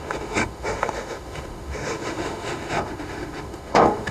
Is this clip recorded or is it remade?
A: remade